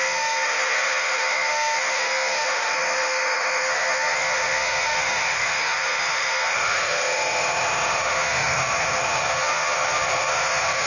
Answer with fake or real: fake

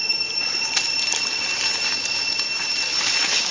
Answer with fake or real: real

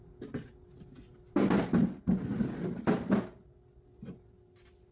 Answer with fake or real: real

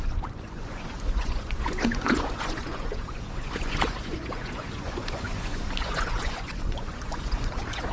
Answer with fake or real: fake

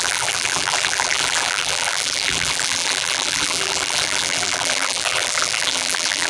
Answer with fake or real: fake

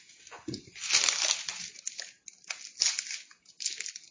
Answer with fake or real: real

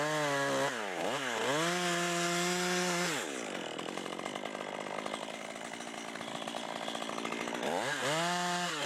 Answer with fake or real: real